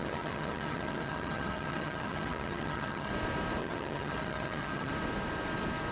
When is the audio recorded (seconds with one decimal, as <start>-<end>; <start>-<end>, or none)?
3.1-3.6; 4.9-5.9

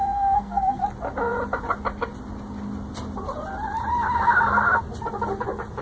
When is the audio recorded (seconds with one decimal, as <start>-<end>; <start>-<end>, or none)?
0.8-5.8

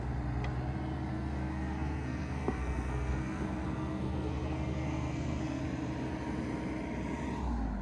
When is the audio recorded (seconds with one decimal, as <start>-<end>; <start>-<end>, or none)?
0.0-1.1; 5.6-7.8

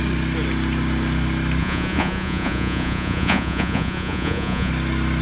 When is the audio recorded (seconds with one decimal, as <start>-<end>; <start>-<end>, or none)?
0.0-1.6; 4.7-5.2